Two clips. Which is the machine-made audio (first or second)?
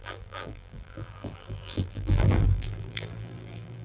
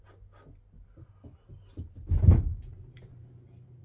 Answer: first